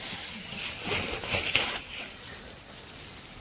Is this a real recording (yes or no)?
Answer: yes